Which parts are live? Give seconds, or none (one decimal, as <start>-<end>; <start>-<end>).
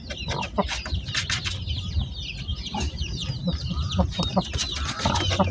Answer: 0.0-5.5